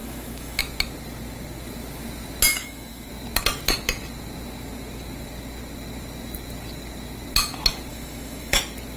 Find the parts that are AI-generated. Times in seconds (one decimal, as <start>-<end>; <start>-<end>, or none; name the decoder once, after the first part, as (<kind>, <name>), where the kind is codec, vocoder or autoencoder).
0.0-0.6 (autoencoder, DAC-VAE); 2.5-3.1; 7.9-8.6